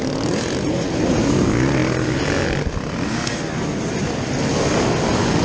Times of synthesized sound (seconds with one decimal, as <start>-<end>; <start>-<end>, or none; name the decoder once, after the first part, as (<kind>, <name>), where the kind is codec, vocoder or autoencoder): none